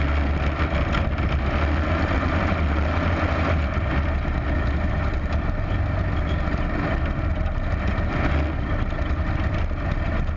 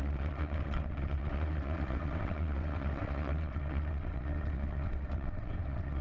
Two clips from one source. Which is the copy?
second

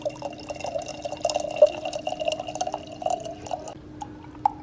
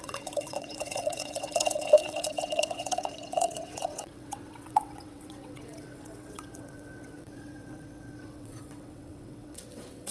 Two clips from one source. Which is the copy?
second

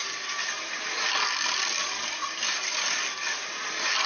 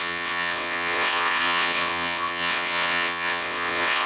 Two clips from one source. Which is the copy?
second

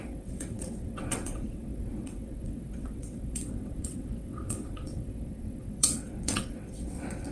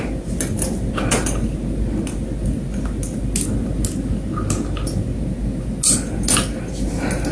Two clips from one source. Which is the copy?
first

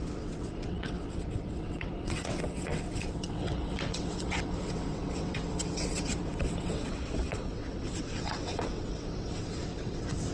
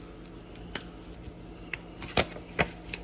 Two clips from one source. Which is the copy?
first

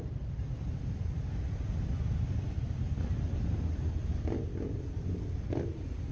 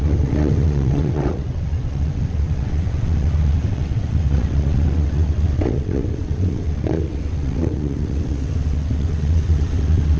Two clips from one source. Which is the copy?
second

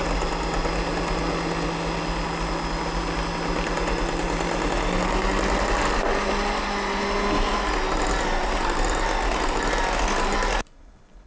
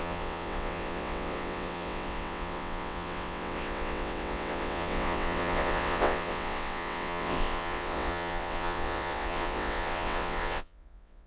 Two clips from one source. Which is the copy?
second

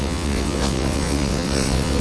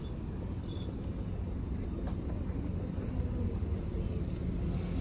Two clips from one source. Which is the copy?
first